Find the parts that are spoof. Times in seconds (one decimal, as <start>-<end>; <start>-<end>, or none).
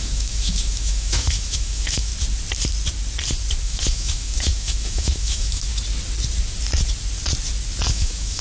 0.0-2.1; 3.6-5.7; 7.9-8.4